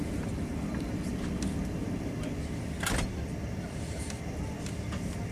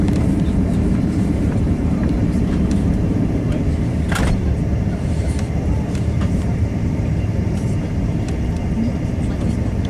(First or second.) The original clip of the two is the first